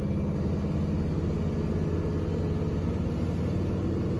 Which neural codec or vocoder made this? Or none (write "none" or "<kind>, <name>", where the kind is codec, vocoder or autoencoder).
none